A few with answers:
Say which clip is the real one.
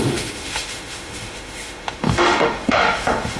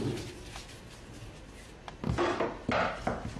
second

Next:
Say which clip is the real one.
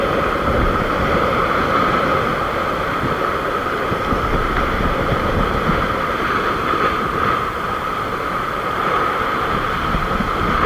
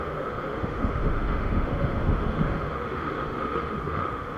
first